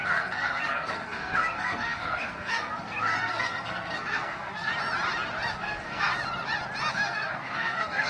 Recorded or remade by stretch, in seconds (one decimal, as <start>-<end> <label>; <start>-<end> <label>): 0.0-4.7 remade; 4.7-5.5 recorded; 5.5-6.1 remade; 6.1-6.9 recorded; 6.9-8.1 remade